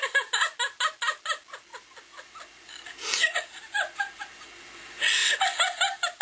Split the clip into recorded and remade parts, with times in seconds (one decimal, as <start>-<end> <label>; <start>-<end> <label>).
0.0-6.2 recorded